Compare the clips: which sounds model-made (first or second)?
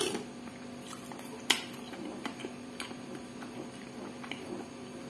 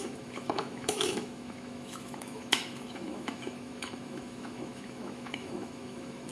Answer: second